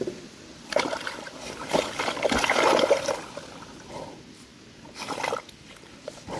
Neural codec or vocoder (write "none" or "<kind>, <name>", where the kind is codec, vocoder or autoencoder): none